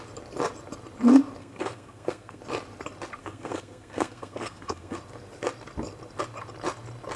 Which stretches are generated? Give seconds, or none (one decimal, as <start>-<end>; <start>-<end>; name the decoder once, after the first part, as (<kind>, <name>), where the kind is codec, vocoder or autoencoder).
1.4-2.4 (codec, SNAC); 3.2-5.0